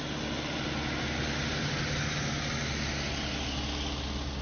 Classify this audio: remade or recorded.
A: recorded